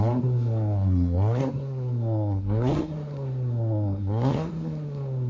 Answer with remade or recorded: remade